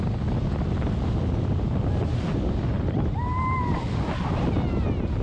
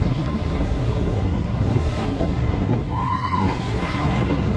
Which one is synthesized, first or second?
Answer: second